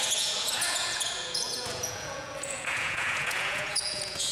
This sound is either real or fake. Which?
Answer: fake